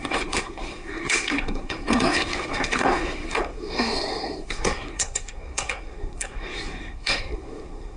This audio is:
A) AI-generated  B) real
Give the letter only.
A